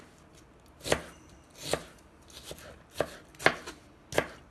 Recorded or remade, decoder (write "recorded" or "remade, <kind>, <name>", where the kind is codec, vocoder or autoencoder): recorded